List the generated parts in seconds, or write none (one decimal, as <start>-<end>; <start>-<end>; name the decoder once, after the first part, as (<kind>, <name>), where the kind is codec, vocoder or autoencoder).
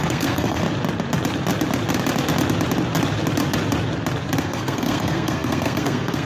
0.0-0.6 (codec, SNAC); 4.4-6.3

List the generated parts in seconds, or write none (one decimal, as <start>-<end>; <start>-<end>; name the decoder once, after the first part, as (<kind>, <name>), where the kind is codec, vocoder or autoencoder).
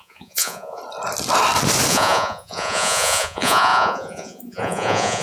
0.0-0.8 (vocoder, Vocos); 1.9-5.2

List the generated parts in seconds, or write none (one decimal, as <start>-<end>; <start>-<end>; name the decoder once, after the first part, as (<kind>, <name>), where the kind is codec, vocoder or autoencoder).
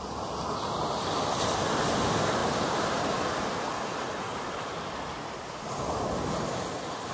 none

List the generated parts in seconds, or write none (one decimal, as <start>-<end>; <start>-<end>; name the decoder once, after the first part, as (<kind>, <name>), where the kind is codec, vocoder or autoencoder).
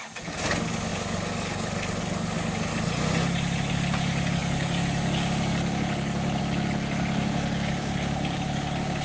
0.0-2.7 (codec, DAC); 3.7-9.0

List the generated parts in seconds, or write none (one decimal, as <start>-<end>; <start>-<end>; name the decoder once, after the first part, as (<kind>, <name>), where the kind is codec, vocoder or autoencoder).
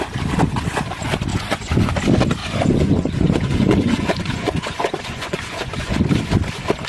1.3-1.9 (vocoder, Vocos); 2.4-5.9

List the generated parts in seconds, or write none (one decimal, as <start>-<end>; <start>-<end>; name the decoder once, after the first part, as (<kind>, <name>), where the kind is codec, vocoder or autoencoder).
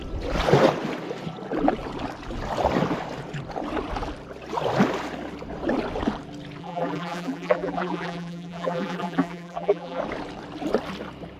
6.6-10.0 (vocoder, BigVGAN v2)